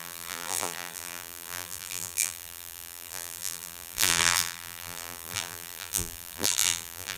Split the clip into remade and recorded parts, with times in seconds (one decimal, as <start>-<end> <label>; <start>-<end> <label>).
0.0-7.2 remade